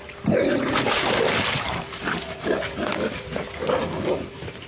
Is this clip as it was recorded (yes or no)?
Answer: yes